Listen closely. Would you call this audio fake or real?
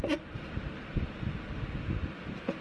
real